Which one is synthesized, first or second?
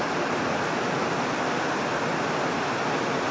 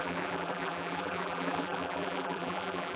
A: second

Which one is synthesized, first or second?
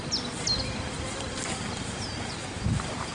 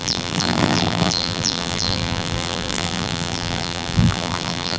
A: second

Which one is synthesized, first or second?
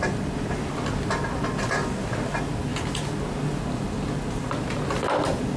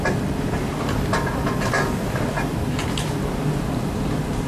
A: second